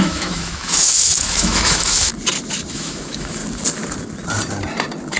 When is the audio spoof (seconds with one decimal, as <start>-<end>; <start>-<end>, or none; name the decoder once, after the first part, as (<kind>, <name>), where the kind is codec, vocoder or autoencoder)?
0.0-2.1 (autoencoder, DAC-VAE); 2.7-3.4